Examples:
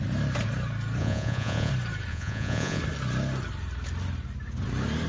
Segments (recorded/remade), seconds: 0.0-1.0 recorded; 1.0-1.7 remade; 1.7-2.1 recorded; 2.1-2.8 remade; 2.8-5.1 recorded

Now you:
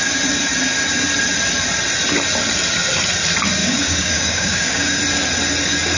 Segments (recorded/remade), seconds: 0.0-3.6 recorded; 3.6-5.0 remade; 5.0-6.0 recorded